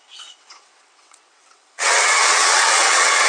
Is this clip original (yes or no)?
no